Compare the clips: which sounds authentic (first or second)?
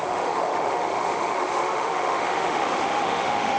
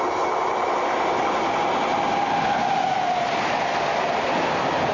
second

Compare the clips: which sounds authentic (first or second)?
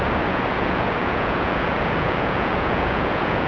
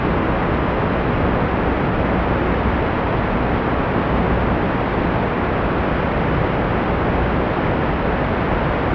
second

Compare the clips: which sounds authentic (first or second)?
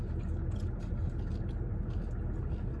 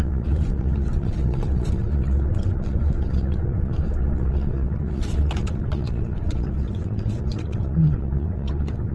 first